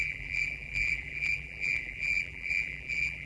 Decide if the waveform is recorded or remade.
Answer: remade